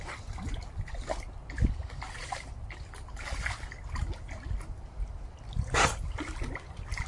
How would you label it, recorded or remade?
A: recorded